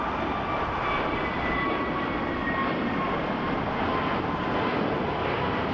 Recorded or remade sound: recorded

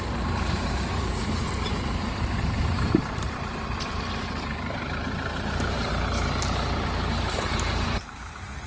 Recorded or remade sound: remade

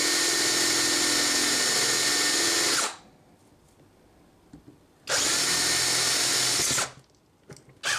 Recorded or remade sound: recorded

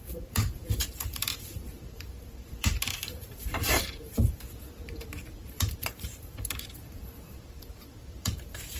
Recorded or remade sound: remade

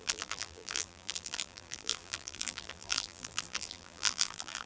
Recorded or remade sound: remade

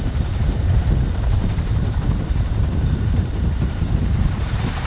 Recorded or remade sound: remade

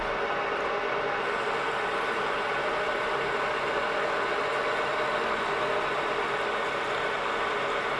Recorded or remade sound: recorded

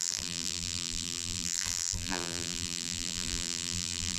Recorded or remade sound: remade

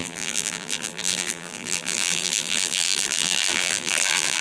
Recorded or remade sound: remade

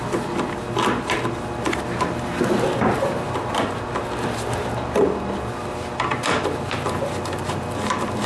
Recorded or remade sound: recorded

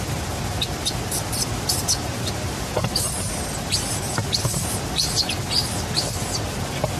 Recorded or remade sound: recorded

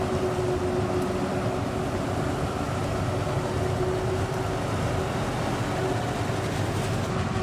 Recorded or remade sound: recorded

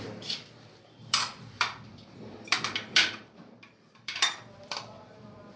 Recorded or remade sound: remade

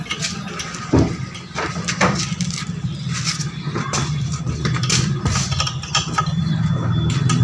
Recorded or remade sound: remade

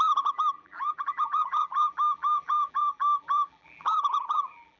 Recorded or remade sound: remade